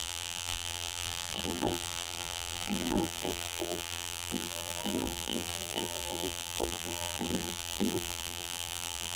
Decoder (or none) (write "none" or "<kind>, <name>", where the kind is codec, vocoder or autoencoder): vocoder, BigVGAN v2